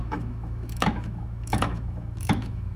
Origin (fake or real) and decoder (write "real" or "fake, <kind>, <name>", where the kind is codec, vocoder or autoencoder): fake, autoencoder, DAC-VAE